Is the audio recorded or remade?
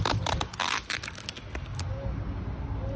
recorded